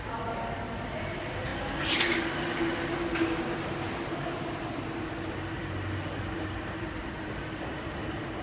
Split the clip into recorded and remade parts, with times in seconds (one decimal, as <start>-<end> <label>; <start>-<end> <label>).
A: 0.0-8.4 recorded